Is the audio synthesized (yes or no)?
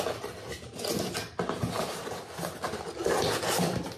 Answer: no